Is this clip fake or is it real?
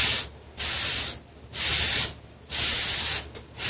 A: real